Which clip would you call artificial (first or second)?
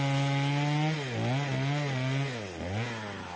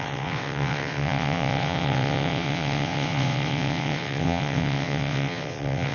second